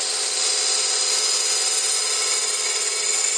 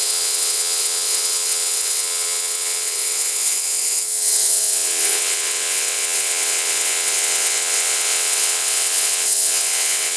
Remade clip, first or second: second